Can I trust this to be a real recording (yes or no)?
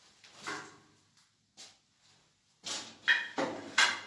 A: yes